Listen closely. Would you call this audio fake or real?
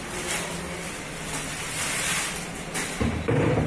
real